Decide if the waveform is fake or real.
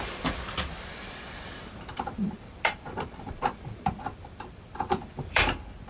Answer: fake